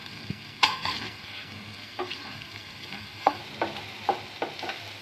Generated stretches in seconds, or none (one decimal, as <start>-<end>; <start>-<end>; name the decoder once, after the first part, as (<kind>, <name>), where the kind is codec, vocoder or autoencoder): 0.0-3.4 (codec, SNAC)